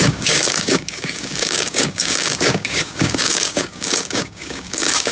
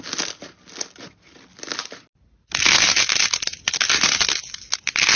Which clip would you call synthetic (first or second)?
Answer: first